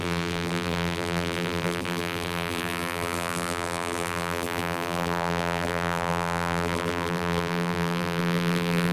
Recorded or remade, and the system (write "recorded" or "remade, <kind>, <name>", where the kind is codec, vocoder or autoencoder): remade, vocoder, BigVGAN v2